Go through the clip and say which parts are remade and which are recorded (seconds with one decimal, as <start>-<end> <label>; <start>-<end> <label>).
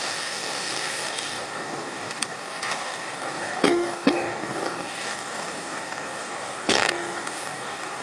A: 0.0-8.0 remade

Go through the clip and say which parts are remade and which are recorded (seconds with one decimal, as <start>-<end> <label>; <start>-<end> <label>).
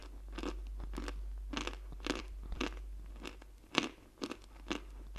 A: 0.0-5.2 recorded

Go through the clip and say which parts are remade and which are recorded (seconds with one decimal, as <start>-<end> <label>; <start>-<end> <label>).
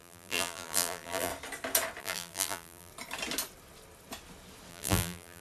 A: 0.0-1.3 remade; 1.3-2.0 recorded; 2.0-2.9 remade; 2.9-4.7 recorded; 4.7-5.4 remade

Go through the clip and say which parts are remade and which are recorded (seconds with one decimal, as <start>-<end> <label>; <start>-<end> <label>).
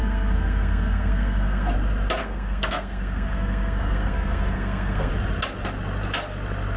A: 0.0-1.7 remade; 1.7-2.2 recorded; 2.2-5.1 remade; 5.1-6.8 recorded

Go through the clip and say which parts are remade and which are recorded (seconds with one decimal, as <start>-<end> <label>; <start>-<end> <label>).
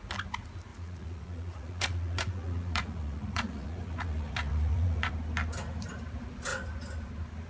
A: 0.0-0.7 recorded; 0.7-5.1 remade; 5.1-7.5 recorded